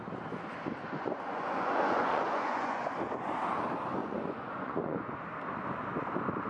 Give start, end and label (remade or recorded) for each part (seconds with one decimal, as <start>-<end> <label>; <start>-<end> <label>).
0.0-0.8 recorded; 0.8-2.8 remade; 2.8-4.0 recorded; 4.0-5.2 remade; 5.2-6.5 recorded

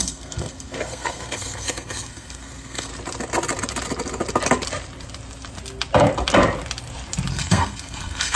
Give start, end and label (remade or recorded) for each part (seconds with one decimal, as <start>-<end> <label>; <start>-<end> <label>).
0.0-2.9 remade; 2.9-7.3 recorded; 7.3-8.4 remade